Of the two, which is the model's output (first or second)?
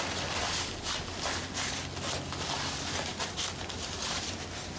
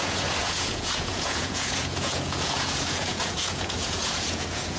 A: second